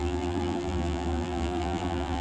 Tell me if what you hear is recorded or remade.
remade